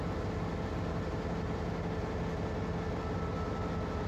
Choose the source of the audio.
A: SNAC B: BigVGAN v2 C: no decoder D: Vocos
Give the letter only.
C